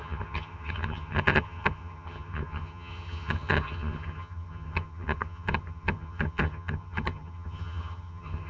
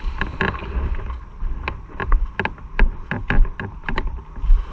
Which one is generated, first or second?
first